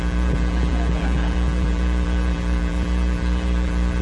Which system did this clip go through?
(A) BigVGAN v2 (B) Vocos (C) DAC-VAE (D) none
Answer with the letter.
A